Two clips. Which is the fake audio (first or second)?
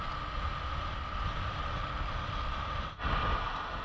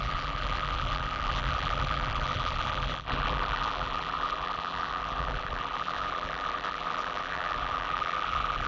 second